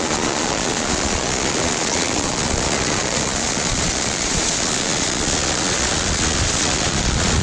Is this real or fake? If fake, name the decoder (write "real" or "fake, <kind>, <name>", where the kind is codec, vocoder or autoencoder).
fake, vocoder, Vocos